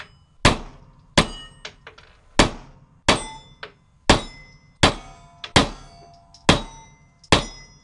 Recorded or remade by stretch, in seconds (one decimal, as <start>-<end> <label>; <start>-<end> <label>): 0.0-7.8 recorded